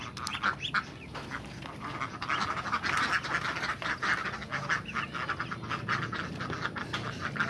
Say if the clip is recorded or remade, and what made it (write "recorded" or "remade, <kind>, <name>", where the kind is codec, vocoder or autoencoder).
recorded